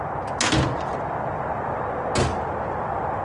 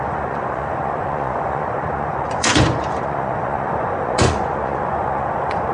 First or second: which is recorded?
first